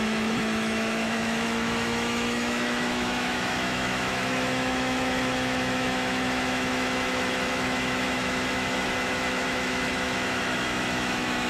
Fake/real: fake